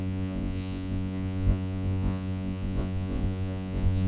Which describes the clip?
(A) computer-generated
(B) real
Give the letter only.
A